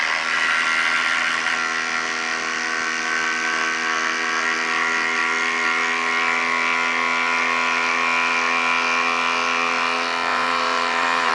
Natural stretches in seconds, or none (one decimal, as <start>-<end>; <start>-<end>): 0.0-10.3